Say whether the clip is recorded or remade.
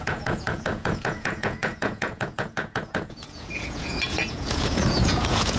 remade